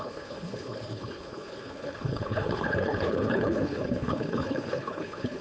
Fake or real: fake